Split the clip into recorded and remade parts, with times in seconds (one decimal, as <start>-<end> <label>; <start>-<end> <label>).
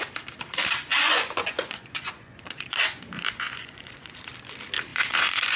0.0-0.9 recorded; 0.9-4.3 remade; 4.3-4.9 recorded; 4.9-5.6 remade